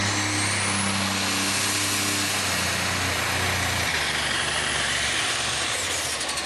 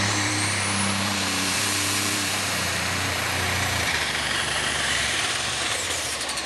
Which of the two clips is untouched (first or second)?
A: first